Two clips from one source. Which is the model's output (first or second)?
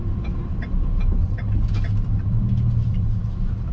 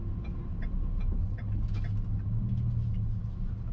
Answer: first